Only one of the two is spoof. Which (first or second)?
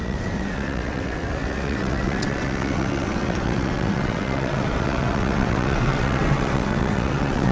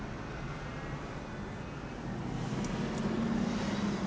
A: first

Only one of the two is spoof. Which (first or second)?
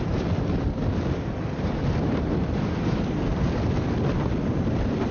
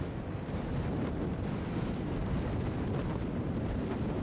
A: first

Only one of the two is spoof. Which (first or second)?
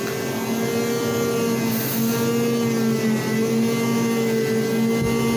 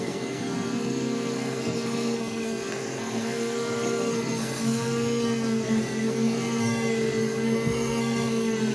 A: second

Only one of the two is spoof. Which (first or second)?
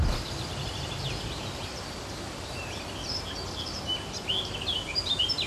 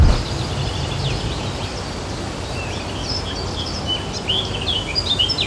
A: first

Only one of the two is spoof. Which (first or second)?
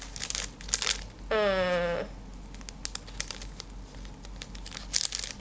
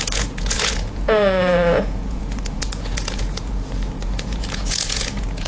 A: second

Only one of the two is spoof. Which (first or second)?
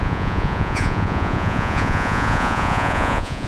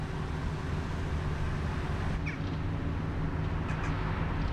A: first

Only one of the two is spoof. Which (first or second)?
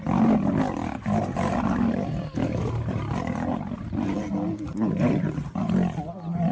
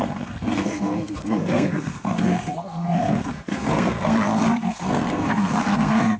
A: second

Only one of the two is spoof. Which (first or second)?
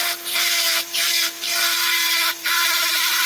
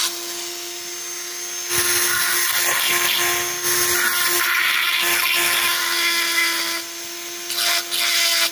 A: first